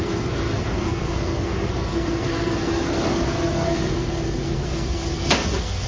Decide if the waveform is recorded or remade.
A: remade